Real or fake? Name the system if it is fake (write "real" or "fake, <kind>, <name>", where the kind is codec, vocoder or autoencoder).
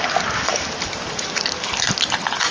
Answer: real